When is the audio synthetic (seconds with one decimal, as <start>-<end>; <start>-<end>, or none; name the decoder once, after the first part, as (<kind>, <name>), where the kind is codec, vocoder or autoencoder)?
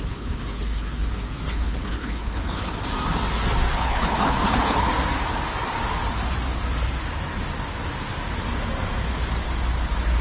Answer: 0.0-2.7 (codec, HILCodec); 3.7-4.9